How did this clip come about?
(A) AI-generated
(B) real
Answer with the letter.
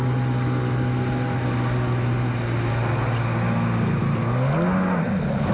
B